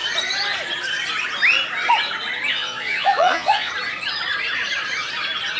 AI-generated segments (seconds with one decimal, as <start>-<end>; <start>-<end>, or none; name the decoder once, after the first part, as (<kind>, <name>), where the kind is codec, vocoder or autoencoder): 2.5-3.7 (vocoder, Vocos)